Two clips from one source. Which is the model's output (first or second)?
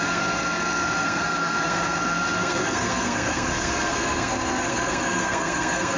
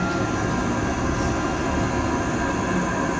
first